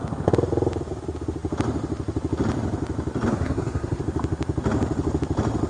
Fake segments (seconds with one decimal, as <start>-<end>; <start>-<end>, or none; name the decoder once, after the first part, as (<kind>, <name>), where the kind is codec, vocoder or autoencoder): 3.3-4.0 (codec, SNAC)